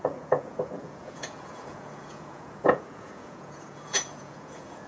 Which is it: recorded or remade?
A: remade